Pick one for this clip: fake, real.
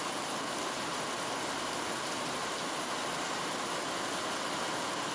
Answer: real